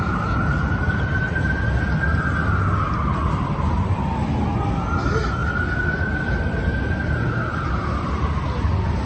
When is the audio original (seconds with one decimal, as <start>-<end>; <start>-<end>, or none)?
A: 0.0-9.1